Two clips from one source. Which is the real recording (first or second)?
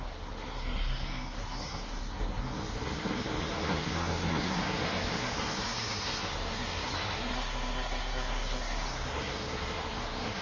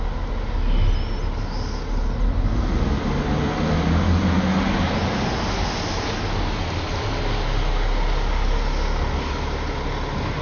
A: second